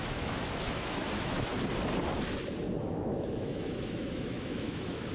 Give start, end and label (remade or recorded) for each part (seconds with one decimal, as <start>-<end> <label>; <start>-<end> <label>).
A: 0.0-1.5 remade; 1.5-2.8 recorded; 2.8-5.1 remade